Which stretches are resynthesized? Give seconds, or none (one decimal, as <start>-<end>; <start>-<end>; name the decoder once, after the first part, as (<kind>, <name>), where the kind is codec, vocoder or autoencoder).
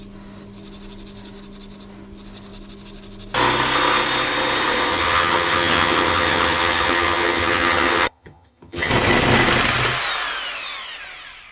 4.9-8.9 (vocoder, HiFi-GAN)